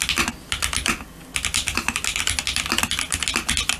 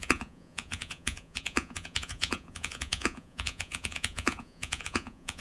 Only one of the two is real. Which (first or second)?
first